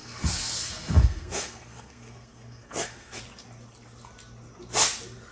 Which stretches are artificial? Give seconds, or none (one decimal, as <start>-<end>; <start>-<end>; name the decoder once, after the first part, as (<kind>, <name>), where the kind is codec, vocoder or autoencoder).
0.0-3.2 (codec, SNAC)